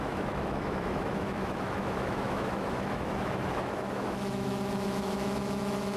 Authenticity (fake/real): fake